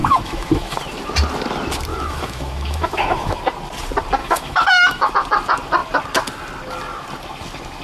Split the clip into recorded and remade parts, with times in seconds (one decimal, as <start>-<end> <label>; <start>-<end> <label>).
0.0-0.8 remade; 0.8-1.9 recorded; 1.9-3.4 remade; 3.4-4.2 recorded; 4.2-5.1 remade; 5.1-7.8 recorded